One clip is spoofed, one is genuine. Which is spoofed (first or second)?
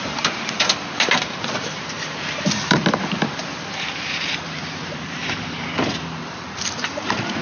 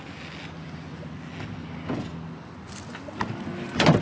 first